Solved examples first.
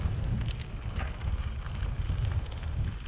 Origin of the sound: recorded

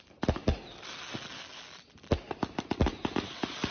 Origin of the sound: recorded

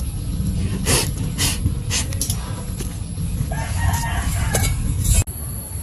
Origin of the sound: recorded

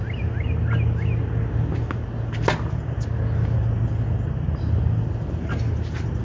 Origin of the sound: recorded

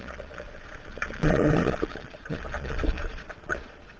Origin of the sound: remade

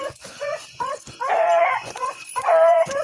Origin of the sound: remade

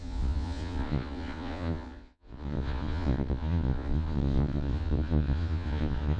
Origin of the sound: remade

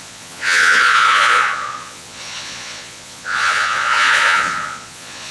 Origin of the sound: remade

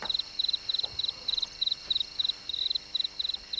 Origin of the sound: recorded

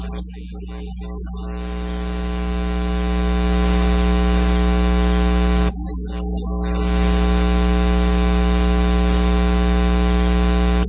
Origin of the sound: recorded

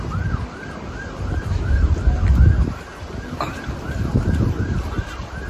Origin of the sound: recorded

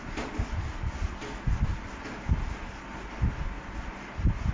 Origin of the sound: recorded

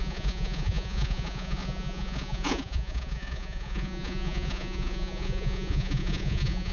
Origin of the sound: remade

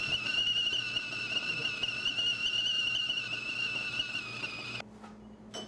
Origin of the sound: recorded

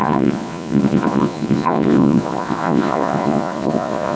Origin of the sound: remade